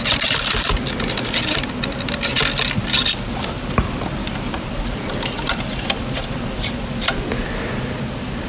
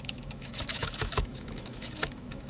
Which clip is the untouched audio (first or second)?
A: first